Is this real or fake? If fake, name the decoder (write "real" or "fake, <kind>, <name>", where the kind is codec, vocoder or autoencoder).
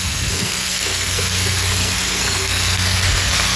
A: fake, codec, SNAC